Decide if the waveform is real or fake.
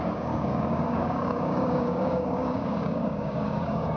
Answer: fake